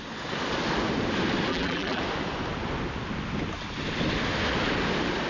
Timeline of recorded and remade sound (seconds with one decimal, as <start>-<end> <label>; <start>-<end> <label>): 0.0-1.5 recorded; 1.5-2.0 remade; 2.0-5.3 recorded